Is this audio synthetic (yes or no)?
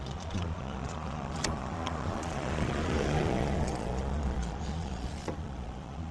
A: yes